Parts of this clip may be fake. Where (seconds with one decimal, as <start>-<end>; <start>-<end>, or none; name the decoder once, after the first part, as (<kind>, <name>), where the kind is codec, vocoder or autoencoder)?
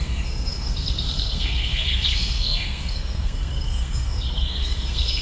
0.0-5.2 (codec, SNAC)